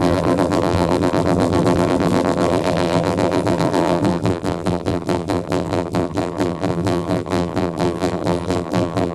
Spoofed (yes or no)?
yes